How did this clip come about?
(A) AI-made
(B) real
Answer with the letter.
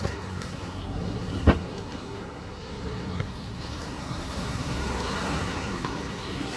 A